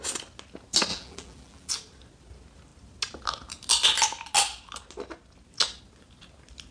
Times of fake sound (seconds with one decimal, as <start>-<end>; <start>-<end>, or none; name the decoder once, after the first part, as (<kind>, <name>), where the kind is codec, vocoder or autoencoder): 0.9-1.7 (vocoder, BigVGAN v2)